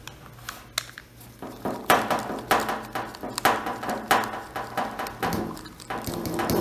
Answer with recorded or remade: recorded